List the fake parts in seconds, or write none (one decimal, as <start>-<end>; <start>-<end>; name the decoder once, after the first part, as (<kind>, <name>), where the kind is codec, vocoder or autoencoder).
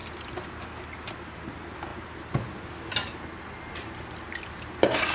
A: none